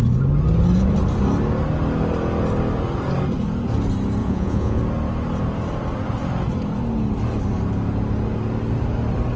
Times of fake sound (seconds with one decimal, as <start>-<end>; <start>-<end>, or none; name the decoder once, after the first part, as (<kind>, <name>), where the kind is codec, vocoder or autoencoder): 4.2-4.8 (vocoder, Vocos)